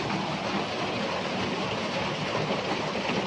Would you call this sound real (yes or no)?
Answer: yes